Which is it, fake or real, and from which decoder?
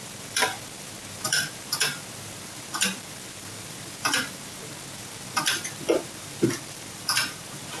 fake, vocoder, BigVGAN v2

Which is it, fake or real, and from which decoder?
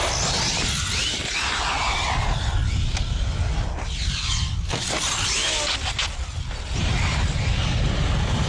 real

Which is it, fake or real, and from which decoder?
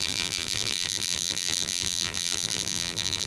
fake, vocoder, BigVGAN v2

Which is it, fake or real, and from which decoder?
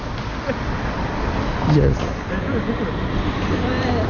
real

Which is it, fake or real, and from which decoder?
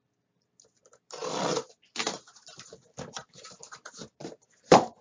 real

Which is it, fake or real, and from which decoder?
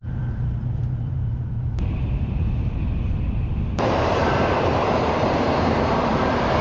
fake, vocoder, BigVGAN v2